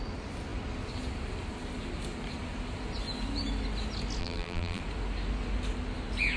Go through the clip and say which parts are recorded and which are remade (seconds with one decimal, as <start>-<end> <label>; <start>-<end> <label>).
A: 0.0-4.2 recorded; 4.2-4.8 remade; 4.8-6.4 recorded